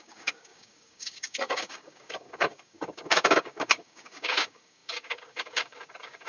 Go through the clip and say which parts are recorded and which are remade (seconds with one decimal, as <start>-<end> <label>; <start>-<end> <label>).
0.0-6.3 remade